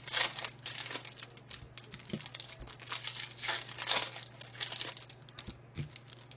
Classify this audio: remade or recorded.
recorded